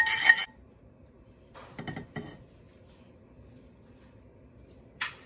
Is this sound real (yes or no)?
yes